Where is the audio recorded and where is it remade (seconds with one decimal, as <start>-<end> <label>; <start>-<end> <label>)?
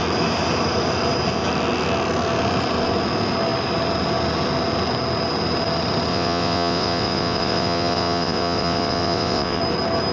0.0-6.1 recorded; 6.1-9.6 remade; 9.6-10.1 recorded